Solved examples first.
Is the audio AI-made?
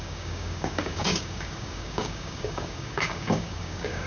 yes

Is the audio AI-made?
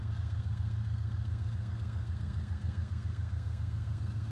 yes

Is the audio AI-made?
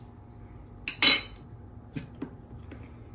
no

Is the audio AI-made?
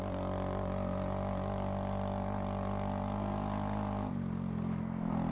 no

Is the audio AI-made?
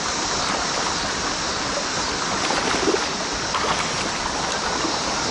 no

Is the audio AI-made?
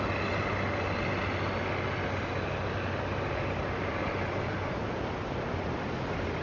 no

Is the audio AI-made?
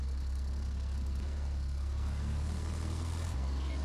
yes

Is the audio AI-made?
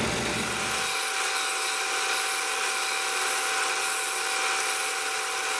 no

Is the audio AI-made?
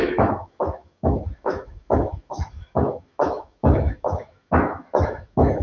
yes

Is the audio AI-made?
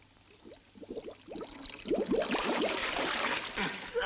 no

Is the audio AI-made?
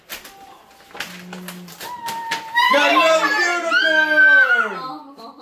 no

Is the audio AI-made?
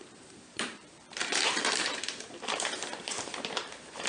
yes